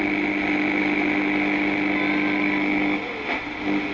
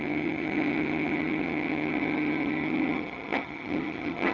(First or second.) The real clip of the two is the first